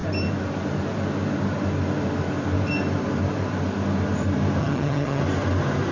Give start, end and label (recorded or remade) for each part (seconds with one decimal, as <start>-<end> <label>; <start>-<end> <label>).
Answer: 0.0-4.6 recorded; 4.6-5.2 remade; 5.2-5.9 recorded